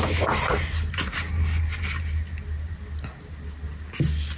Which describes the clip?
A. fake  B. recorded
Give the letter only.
B